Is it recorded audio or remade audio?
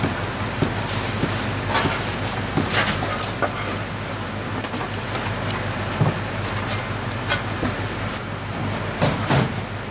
recorded